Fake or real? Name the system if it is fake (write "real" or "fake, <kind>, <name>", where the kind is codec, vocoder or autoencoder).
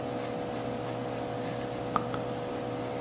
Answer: real